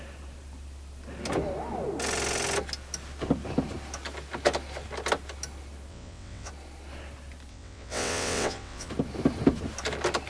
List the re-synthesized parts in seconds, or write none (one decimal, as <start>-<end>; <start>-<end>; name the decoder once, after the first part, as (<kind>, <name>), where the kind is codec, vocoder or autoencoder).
5.9-6.5 (vocoder, WaveNeXt); 7.5-8.9